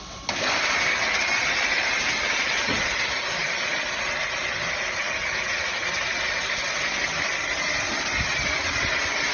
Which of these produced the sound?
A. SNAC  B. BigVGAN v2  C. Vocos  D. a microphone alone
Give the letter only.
D